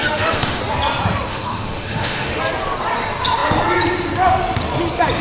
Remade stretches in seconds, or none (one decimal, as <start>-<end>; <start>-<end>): 0.0-0.6; 1.3-2.4